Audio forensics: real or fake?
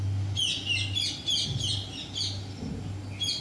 real